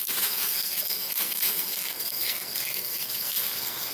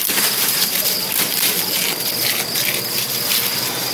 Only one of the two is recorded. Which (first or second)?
second